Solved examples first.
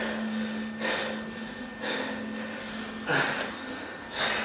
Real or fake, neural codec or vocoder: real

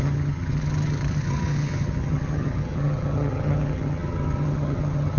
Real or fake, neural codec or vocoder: fake, vocoder, HiFi-GAN